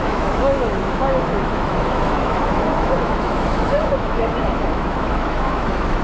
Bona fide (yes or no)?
no